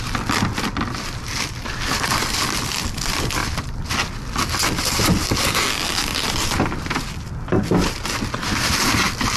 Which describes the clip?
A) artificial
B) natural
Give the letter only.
B